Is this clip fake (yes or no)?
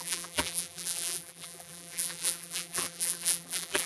yes